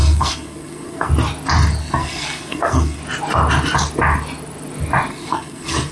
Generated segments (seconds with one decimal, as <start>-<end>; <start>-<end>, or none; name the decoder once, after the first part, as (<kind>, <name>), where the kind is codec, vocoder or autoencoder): 0.0-1.1 (codec, SNAC); 1.8-3.0; 5.1-5.9